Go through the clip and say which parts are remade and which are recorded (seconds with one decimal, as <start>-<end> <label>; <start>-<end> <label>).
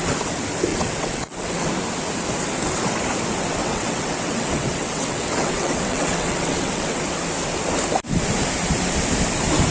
0.0-0.7 recorded; 0.7-1.7 remade; 1.7-3.6 recorded; 3.6-7.0 remade; 7.0-9.7 recorded